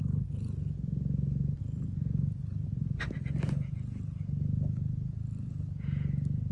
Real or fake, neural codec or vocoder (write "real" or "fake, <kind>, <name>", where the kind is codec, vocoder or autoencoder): real